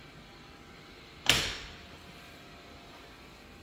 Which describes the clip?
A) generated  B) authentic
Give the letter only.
B